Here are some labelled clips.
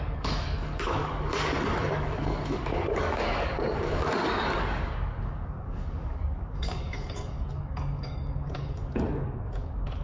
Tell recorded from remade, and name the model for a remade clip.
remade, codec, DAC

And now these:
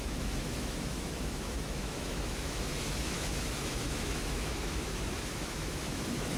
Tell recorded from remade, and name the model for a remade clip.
remade, autoencoder, DAC-VAE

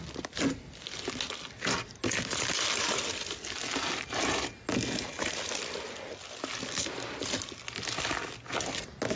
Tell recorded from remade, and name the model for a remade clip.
recorded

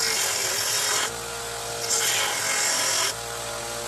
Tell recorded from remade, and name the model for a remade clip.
recorded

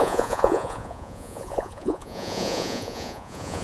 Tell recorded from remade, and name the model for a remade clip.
remade, vocoder, Vocos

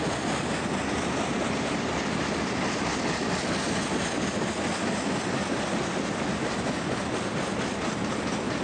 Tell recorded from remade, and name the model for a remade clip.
recorded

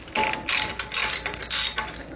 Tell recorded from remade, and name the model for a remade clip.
recorded